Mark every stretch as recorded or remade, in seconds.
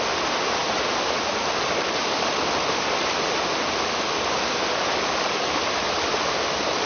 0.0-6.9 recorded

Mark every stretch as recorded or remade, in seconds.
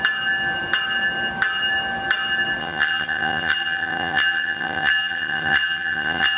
0.0-2.6 recorded; 2.6-6.4 remade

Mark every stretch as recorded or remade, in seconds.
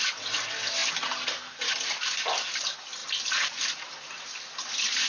0.0-5.1 recorded